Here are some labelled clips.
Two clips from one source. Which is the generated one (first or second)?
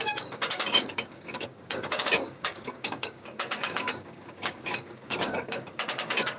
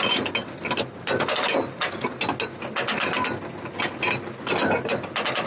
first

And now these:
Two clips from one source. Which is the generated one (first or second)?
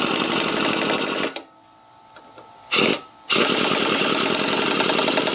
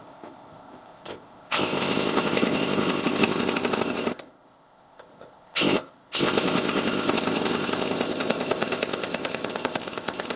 second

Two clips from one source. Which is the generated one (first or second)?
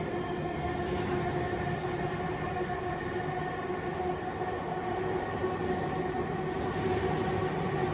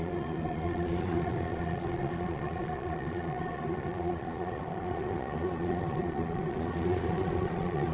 second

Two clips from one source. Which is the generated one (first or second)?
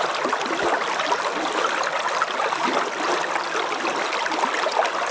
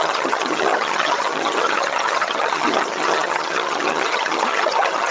second